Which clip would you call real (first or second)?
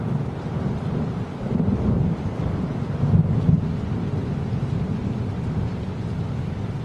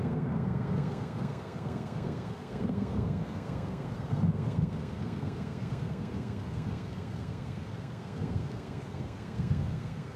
first